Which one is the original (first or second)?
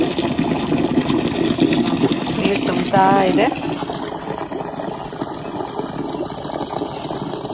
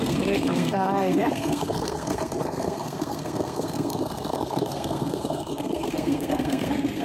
first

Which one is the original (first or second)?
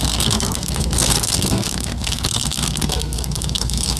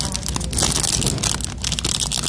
second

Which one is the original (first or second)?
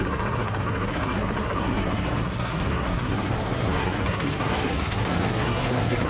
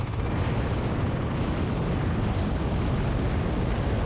second